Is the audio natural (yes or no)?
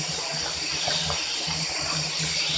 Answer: yes